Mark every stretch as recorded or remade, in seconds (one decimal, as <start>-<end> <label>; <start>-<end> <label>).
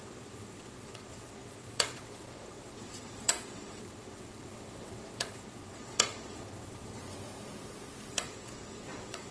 0.0-7.0 remade; 7.0-8.1 recorded; 8.1-9.3 remade